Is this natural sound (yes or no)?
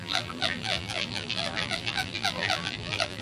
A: no